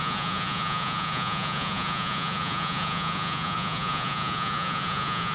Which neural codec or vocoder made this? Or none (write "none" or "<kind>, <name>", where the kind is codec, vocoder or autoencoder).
vocoder, Vocos